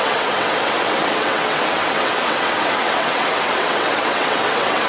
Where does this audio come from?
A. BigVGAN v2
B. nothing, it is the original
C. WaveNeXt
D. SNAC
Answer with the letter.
C